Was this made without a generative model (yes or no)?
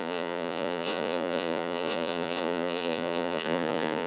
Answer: no